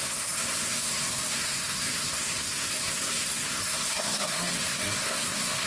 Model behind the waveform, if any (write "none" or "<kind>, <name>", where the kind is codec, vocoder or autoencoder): codec, SNAC